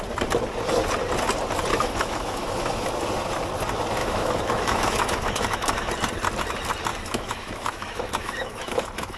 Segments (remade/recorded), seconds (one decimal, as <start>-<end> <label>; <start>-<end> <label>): 0.0-1.7 recorded; 1.7-2.9 remade; 2.9-4.0 recorded; 4.0-5.9 remade; 5.9-6.9 recorded; 6.9-9.2 remade